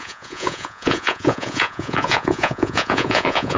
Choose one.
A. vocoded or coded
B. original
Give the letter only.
A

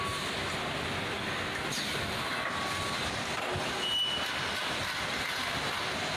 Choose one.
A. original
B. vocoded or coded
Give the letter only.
A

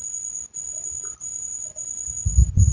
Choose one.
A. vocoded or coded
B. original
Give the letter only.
B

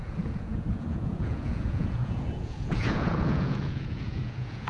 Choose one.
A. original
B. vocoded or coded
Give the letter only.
B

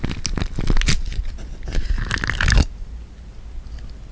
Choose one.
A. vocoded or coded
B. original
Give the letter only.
B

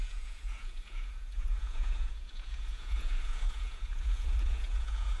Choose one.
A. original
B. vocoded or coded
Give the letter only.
B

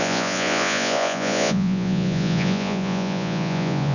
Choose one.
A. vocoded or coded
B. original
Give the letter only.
A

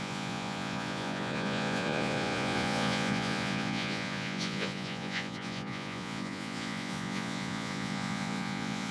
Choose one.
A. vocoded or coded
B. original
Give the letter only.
A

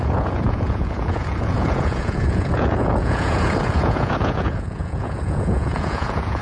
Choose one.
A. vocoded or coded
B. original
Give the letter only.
A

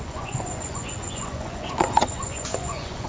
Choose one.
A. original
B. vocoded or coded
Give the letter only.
B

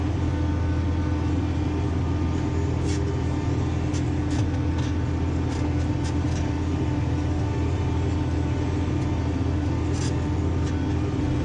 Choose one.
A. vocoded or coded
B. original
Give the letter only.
B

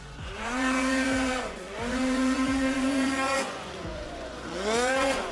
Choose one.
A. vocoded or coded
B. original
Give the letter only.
A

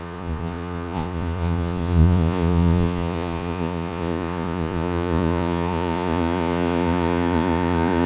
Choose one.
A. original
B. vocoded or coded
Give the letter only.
B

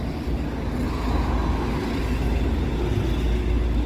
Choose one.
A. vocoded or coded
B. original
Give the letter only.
B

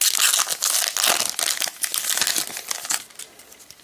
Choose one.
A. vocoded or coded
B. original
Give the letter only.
B